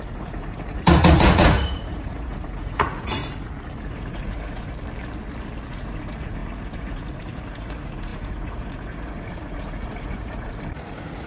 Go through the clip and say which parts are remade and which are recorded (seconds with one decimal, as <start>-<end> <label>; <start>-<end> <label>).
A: 0.0-3.2 remade; 3.2-3.8 recorded; 3.8-4.7 remade; 4.7-5.7 recorded; 5.7-11.3 remade